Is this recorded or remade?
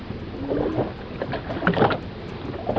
recorded